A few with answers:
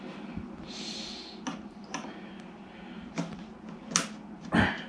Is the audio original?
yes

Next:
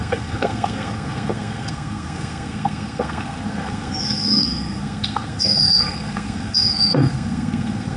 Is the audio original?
no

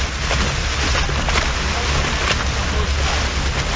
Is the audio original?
yes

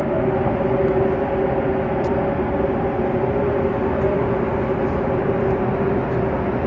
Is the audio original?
yes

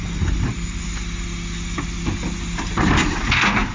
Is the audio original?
yes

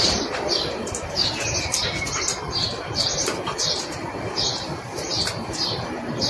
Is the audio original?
no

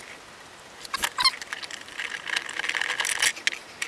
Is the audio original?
yes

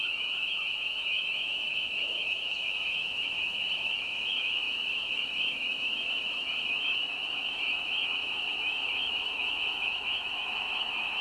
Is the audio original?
no